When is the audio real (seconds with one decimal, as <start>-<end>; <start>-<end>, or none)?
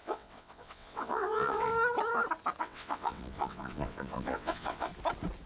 1.7-2.6; 4.9-5.5